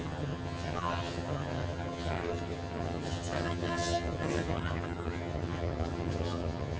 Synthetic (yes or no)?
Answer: yes